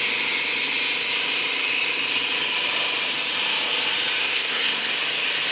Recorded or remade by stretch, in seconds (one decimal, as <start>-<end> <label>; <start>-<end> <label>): 0.0-4.2 recorded; 4.2-4.9 remade; 4.9-5.5 recorded